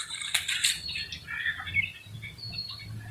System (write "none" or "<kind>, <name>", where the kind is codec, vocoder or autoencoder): none